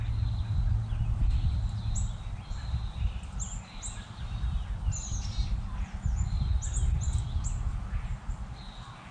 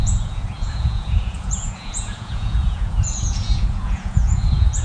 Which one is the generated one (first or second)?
second